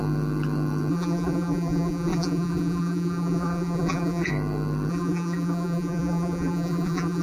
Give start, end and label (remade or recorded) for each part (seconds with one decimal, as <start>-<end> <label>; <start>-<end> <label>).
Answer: 0.0-0.9 recorded; 0.9-4.3 remade; 4.3-4.9 recorded; 4.9-7.2 remade